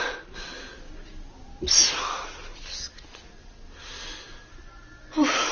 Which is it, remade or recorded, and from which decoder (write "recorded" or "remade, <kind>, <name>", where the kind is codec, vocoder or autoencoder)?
recorded